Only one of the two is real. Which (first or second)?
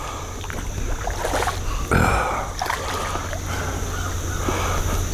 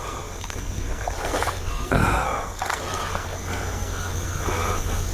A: first